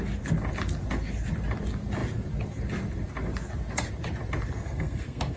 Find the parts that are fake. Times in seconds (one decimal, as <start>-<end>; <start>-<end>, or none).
4.6-5.4